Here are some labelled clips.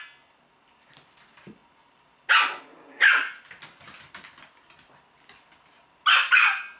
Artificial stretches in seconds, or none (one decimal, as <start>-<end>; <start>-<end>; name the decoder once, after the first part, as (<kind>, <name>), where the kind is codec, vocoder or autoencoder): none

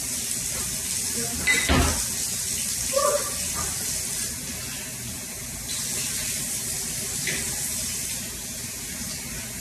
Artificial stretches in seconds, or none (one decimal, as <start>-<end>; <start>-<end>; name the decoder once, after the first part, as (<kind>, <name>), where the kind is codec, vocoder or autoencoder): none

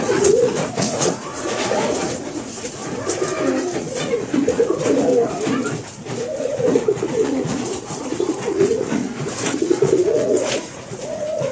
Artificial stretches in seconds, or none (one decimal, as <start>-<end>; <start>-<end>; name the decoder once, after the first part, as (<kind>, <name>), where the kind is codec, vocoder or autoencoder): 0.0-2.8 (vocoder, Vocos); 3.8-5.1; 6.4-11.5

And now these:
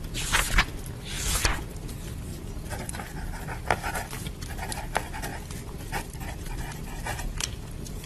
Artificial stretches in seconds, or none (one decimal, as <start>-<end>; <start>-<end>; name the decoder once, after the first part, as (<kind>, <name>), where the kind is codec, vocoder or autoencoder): 5.3-8.1 (vocoder, BigVGAN v2)

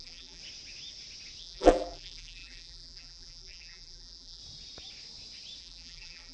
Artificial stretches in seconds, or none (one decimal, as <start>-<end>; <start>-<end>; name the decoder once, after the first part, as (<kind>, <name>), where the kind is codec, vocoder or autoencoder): 0.0-0.4 (vocoder, BigVGAN v2); 1.4-4.4; 5.6-6.3

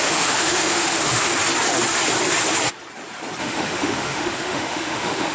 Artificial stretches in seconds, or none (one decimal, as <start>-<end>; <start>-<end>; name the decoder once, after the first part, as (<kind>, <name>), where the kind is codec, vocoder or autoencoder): 0.0-1.3 (autoencoder, DAC-VAE); 3.4-5.3